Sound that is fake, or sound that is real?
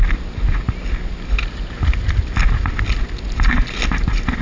real